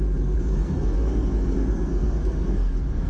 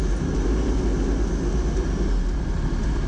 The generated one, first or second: first